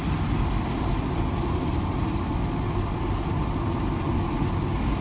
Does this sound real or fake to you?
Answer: real